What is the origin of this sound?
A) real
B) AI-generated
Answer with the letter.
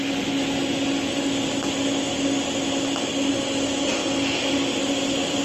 A